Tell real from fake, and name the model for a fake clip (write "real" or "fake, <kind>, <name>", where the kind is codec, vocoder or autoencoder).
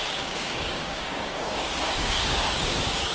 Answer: fake, codec, DAC